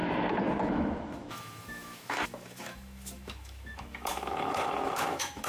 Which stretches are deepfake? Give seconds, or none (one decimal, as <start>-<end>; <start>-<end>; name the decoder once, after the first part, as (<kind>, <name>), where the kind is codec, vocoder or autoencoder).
0.7-5.5 (autoencoder, DAC-VAE)